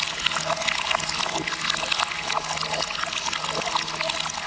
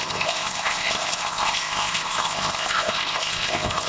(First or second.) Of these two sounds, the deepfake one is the second